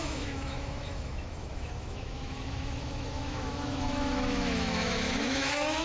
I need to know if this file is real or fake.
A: fake